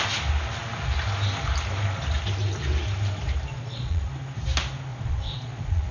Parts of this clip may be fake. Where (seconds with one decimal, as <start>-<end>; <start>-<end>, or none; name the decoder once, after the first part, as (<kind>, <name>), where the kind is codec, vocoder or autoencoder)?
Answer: 3.5-4.1 (vocoder, Vocos); 4.9-5.9